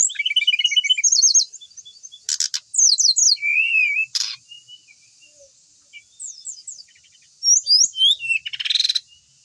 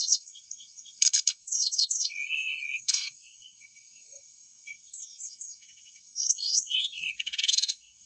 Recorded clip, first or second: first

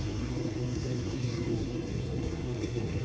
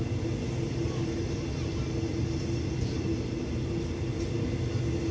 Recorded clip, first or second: second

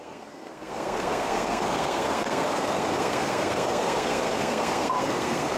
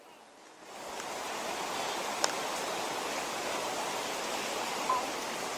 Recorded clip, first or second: second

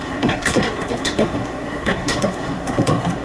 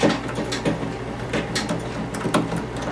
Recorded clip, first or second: second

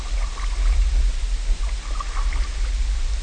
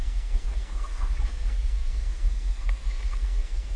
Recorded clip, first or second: first